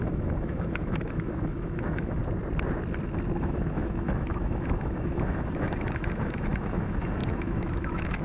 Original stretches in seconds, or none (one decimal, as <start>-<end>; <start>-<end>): 2.2-3.4